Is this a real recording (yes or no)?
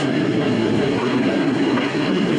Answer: no